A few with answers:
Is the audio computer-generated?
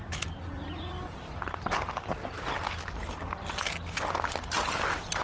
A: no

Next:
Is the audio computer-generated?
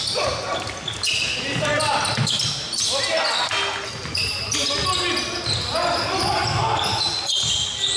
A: no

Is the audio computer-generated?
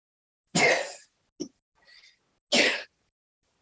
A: no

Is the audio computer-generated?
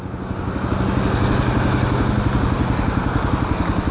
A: no